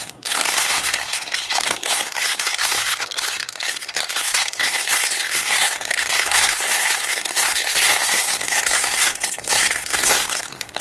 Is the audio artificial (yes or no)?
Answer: yes